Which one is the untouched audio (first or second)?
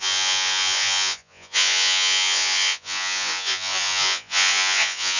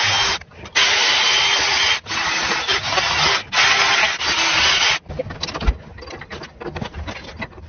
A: second